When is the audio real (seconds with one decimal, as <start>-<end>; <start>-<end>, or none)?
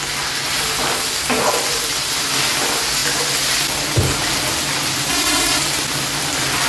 0.0-6.7